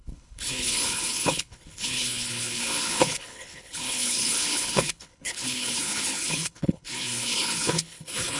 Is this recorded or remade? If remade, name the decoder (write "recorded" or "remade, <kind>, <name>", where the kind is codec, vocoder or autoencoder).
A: remade, codec, HILCodec